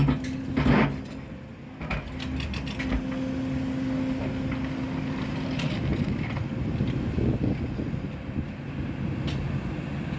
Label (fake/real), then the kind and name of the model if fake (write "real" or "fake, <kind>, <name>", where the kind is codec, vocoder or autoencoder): real